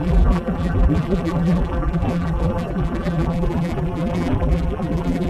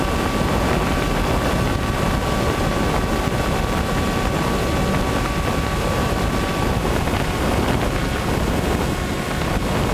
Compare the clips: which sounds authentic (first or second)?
second